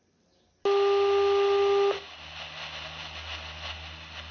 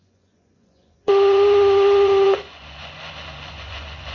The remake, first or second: second